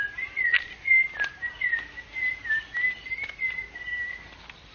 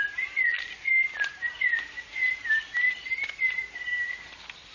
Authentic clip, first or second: first